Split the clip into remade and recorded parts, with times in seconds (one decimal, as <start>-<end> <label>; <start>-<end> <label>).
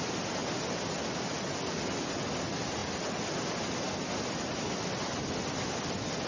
0.0-6.3 recorded